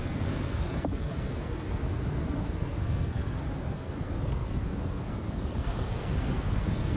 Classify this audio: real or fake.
fake